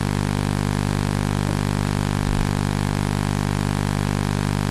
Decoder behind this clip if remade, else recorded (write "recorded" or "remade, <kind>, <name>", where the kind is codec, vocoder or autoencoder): recorded